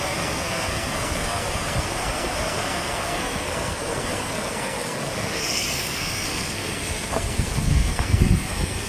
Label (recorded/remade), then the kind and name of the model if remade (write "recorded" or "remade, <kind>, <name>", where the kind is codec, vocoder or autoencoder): remade, codec, SNAC